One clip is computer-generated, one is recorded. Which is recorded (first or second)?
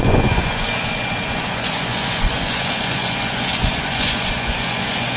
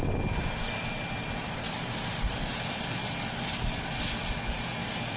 second